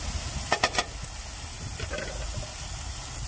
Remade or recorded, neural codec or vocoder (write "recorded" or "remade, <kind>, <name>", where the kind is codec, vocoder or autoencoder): recorded